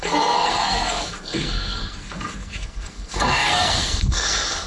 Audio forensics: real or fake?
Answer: fake